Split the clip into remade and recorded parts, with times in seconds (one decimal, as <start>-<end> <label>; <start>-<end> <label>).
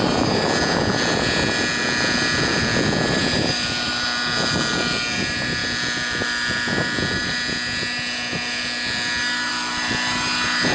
0.0-10.7 recorded